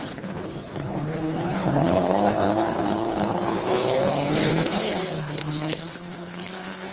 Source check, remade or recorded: remade